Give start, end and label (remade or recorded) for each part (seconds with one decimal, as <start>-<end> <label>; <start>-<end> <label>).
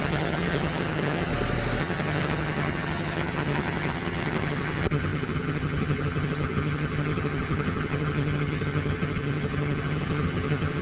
0.0-1.3 remade; 1.3-1.8 recorded; 1.8-10.8 remade